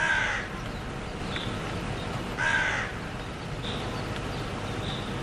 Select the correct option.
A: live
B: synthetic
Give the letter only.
B